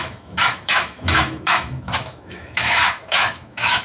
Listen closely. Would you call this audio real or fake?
fake